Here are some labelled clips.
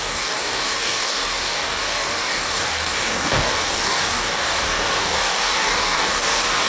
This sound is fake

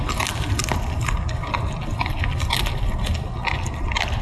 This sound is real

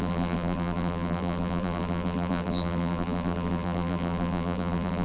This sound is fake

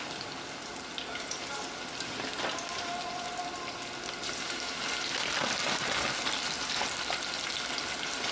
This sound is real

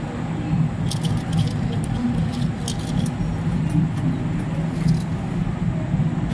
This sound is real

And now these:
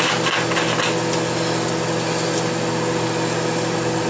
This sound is real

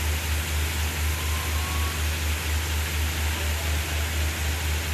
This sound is real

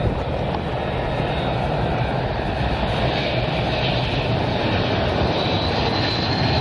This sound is real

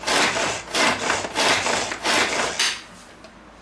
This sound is real